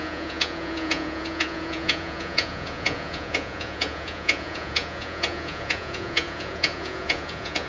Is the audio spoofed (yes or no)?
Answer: yes